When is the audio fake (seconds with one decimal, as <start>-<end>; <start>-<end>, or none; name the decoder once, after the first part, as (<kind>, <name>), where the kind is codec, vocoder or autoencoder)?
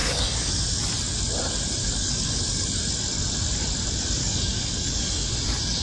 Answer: 0.0-0.5 (codec, DAC); 1.8-2.4; 4.2-5.3